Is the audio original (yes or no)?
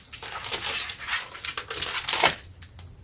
yes